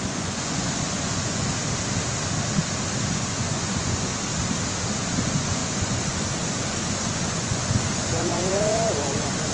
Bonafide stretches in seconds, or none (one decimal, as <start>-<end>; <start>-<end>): 1.5-3.1; 4.1-5.0